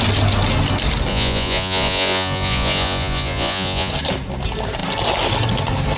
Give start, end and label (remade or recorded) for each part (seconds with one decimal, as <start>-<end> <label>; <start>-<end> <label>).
0.0-1.1 recorded; 1.1-3.9 remade; 3.9-6.0 recorded